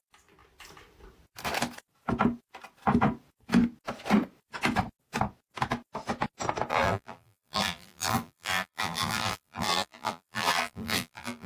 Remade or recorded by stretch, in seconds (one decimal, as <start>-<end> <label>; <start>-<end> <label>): 0.0-6.7 recorded; 6.7-11.5 remade